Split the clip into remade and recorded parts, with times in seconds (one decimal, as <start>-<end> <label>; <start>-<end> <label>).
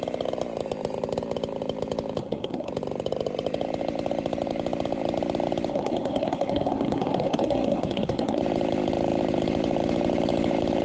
0.0-2.2 recorded; 2.2-2.7 remade; 2.7-5.7 recorded; 5.7-8.4 remade; 8.4-10.8 recorded